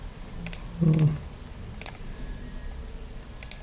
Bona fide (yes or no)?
yes